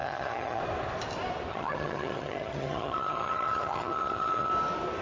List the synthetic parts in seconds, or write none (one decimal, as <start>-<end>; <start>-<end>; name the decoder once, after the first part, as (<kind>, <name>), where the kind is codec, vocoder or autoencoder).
0.0-0.6 (vocoder, HiFi-GAN); 1.5-4.5